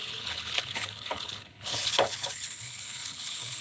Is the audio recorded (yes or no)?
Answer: no